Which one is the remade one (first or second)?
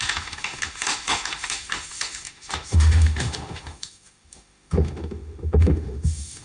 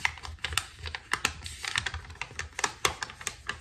first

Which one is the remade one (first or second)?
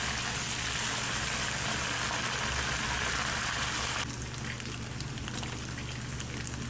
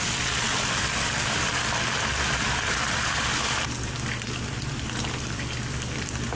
second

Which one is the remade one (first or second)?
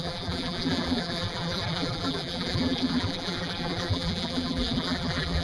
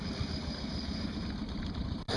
first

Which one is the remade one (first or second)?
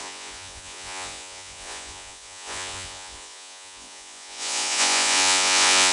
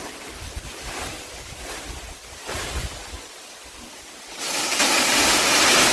first